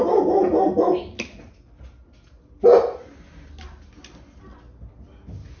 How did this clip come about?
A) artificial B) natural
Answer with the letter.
B